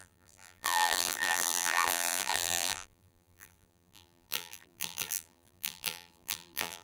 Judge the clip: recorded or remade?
remade